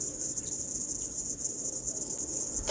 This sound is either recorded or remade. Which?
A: recorded